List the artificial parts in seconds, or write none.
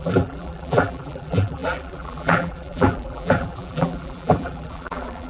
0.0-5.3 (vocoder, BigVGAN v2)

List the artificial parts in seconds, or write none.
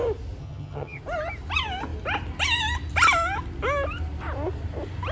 0.4-1.0 (vocoder, HiFi-GAN)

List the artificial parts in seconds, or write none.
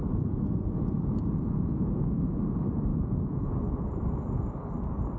0.0-2.4 (vocoder, Vocos); 2.9-3.6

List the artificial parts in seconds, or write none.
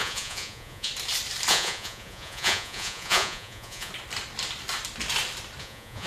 0.0-0.9 (vocoder, Vocos); 1.5-3.9; 5.6-6.1